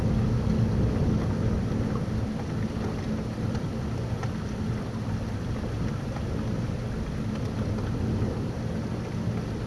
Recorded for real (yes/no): yes